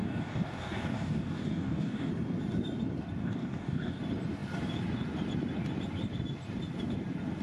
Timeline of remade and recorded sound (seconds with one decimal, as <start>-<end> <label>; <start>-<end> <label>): 0.0-2.1 remade; 2.1-3.2 recorded; 3.2-4.0 remade; 4.0-7.4 recorded